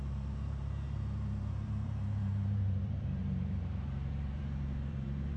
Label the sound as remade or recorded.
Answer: remade